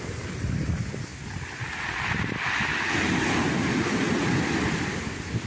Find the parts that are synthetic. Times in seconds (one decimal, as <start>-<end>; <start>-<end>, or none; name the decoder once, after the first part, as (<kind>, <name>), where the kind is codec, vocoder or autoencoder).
none